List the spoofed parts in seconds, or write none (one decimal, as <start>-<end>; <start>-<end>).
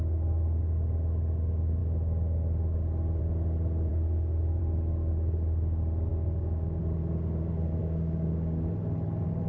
6.1-6.8; 7.8-8.7